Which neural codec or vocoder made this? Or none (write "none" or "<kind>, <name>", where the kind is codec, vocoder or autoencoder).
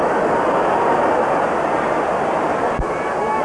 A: none